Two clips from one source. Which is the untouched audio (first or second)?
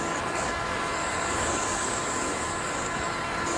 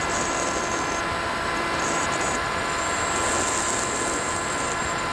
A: second